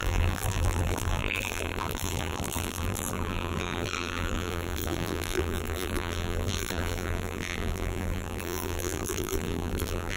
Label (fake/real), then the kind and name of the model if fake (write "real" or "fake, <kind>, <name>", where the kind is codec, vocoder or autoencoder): fake, vocoder, BigVGAN v2